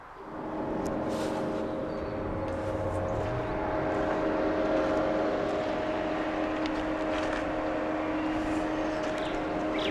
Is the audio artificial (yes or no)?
no